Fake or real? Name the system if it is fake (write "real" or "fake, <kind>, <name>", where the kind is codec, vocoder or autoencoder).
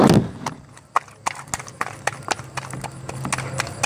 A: real